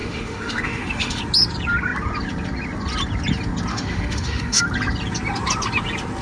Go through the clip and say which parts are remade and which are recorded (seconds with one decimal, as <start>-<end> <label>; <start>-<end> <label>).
0.0-1.2 remade; 1.2-3.7 recorded; 3.7-4.6 remade; 4.6-6.2 recorded